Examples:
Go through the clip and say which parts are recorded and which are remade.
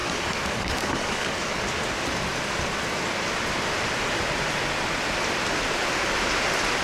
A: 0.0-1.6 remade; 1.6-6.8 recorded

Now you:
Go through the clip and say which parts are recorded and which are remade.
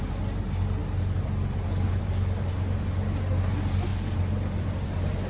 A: 0.0-5.3 recorded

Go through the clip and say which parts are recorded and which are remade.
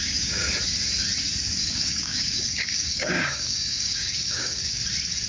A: 0.0-0.5 remade; 0.5-1.6 recorded; 1.6-4.8 remade; 4.8-5.3 recorded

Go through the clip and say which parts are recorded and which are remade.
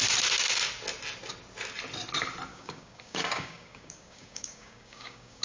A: 0.0-2.5 recorded; 2.5-5.4 remade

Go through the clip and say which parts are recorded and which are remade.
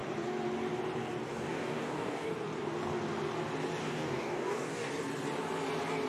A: 0.0-1.3 recorded; 1.3-2.3 remade; 2.3-3.8 recorded; 3.8-4.9 remade; 4.9-6.1 recorded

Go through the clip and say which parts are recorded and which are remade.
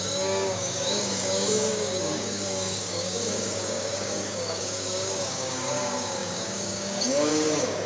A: 0.0-7.9 remade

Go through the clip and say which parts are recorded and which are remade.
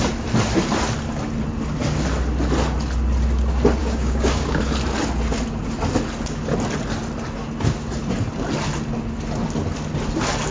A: 0.0-3.8 recorded; 3.8-4.6 remade; 4.6-10.5 recorded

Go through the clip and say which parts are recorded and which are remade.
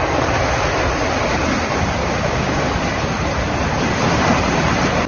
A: 0.0-2.0 recorded; 2.0-2.6 remade; 2.6-5.1 recorded